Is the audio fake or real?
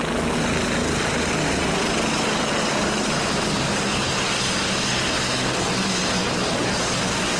real